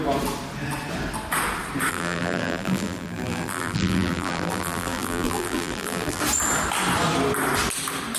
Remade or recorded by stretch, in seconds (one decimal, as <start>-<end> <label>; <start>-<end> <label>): 0.0-1.9 recorded; 1.9-6.2 remade; 6.2-8.2 recorded